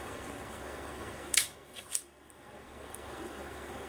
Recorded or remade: remade